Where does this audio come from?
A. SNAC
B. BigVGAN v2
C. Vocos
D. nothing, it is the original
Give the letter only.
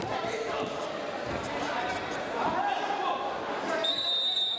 D